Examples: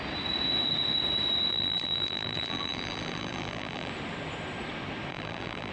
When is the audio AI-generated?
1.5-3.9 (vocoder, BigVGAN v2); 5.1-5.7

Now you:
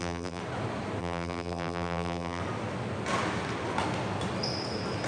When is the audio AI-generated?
0.0-0.4 (vocoder, BigVGAN v2); 1.0-2.4

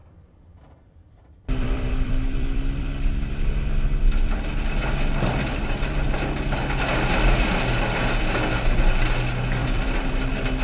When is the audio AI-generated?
0.0-3.5 (vocoder, BigVGAN v2); 9.6-10.1

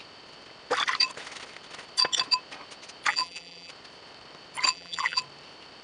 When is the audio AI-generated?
3.1-3.7 (vocoder, BigVGAN v2); 4.7-5.2

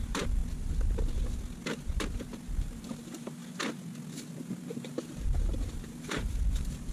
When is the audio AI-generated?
0.0-0.4 (vocoder, BigVGAN v2); 2.6-3.4; 4.4-6.9

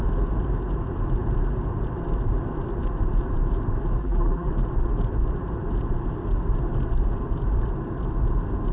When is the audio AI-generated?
4.0-4.5 (vocoder, BigVGAN v2)

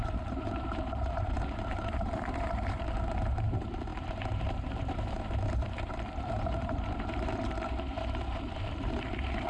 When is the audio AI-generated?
0.0-9.5 (vocoder, BigVGAN v2)